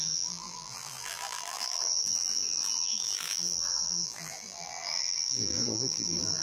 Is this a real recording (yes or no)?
no